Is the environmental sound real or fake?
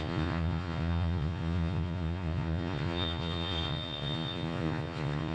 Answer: fake